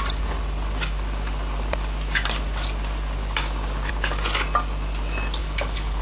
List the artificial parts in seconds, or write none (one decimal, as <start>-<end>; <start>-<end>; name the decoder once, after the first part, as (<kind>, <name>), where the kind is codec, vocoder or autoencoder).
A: 5.4-6.0 (codec, HILCodec)